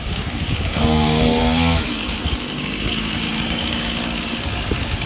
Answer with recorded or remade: remade